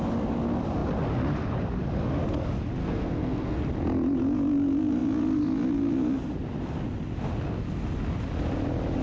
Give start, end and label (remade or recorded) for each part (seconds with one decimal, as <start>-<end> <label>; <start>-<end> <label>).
0.0-2.8 recorded; 2.8-3.6 remade; 3.6-9.0 recorded